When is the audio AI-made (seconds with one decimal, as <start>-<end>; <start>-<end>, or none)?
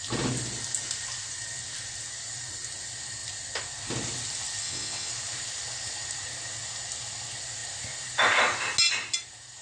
4.6-5.1